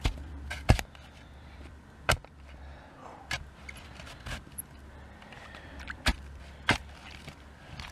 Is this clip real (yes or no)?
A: no